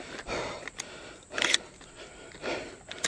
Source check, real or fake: real